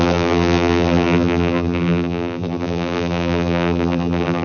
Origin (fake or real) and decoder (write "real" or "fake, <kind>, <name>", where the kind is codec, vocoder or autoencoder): fake, vocoder, BigVGAN v2